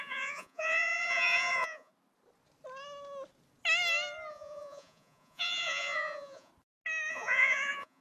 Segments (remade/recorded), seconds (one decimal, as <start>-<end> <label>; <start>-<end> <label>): 0.0-1.9 remade; 1.9-4.3 recorded; 4.3-6.5 remade; 6.5-7.1 recorded; 7.1-8.0 remade